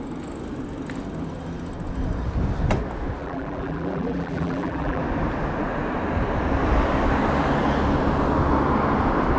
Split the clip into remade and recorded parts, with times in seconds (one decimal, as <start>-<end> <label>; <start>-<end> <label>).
0.0-3.2 recorded; 3.2-5.0 remade; 5.0-9.4 recorded